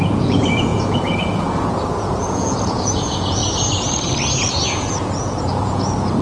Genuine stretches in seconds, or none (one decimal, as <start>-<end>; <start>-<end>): 3.4-4.5